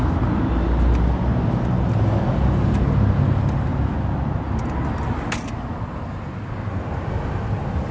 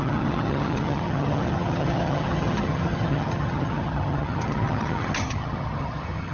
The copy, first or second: second